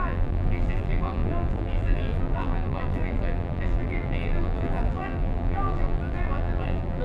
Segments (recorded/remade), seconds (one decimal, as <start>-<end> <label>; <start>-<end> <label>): 0.0-7.0 remade